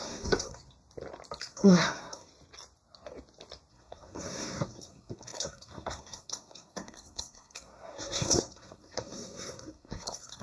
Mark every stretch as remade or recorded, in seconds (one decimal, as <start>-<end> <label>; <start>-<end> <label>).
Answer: 0.0-0.6 remade; 0.6-1.4 recorded; 1.4-2.3 remade; 2.3-3.7 recorded; 3.7-10.4 remade